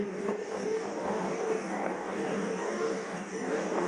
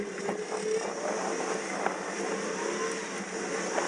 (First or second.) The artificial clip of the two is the first